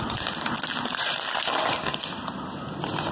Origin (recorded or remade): recorded